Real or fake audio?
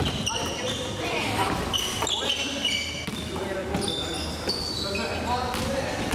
real